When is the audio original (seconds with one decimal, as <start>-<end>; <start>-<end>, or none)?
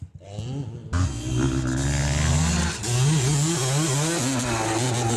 0.0-5.2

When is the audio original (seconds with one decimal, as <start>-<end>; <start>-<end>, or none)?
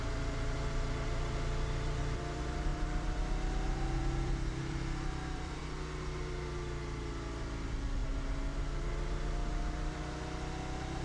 0.0-2.7; 3.2-4.0; 5.6-11.0